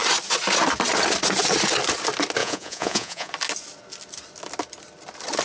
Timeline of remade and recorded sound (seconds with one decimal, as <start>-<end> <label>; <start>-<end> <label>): 0.0-2.4 recorded; 2.4-3.3 remade; 3.3-5.4 recorded